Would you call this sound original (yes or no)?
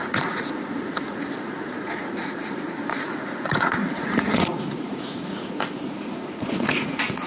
no